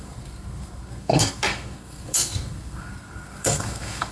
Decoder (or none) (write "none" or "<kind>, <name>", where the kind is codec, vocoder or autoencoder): codec, SNAC